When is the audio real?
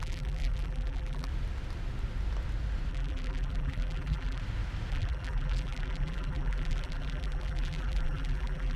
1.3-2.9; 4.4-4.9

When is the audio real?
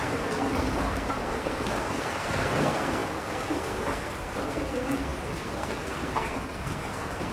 none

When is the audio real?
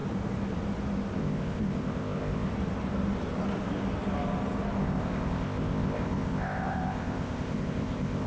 0.0-1.2; 2.5-4.8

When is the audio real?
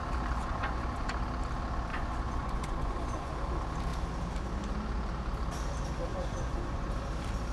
0.0-0.4; 1.1-1.9; 3.3-6.1; 6.9-7.5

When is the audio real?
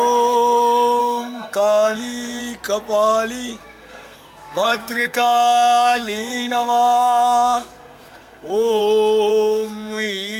0.0-1.0; 2.4-3.6; 8.8-9.3